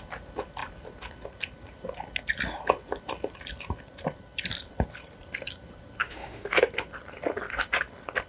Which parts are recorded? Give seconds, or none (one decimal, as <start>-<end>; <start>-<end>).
0.0-6.0; 6.6-8.3